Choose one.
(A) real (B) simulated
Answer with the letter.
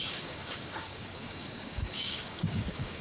B